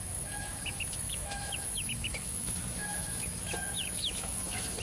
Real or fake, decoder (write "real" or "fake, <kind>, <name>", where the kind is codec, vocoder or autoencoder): fake, autoencoder, DAC-VAE